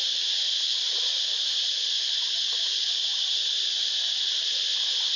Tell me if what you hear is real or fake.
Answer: fake